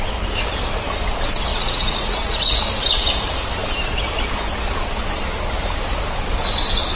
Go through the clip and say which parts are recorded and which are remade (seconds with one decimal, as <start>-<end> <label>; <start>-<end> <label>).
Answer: 0.0-1.5 recorded; 1.5-2.6 remade; 2.6-7.0 recorded